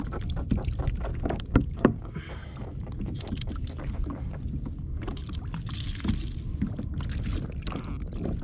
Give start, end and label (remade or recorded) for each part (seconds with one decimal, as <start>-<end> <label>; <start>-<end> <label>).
0.0-1.1 recorded; 1.1-2.2 remade; 2.2-8.4 recorded

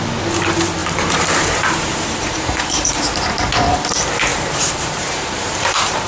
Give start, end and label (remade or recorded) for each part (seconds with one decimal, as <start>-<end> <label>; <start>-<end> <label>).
0.0-0.8 recorded; 0.8-3.8 remade; 3.8-4.3 recorded; 4.3-6.1 remade

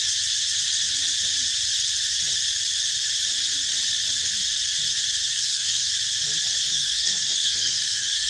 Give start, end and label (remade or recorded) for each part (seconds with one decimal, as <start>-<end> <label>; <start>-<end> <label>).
0.0-5.3 recorded; 5.3-5.9 remade; 5.9-6.7 recorded; 6.7-8.3 remade